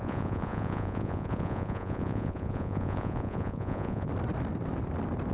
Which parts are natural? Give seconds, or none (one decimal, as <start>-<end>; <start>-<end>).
4.1-5.3